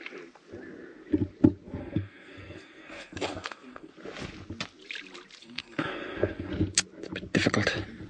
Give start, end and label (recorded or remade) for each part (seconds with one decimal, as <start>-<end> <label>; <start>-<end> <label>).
0.0-1.8 recorded; 1.8-3.9 remade; 3.9-5.4 recorded; 5.4-6.5 remade; 6.5-8.1 recorded